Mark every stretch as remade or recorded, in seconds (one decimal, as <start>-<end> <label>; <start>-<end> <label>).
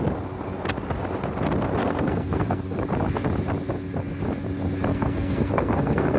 0.0-1.8 recorded; 1.8-2.8 remade; 2.8-4.9 recorded; 4.9-6.2 remade